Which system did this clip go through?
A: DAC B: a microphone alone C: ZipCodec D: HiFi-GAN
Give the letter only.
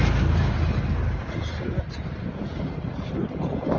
B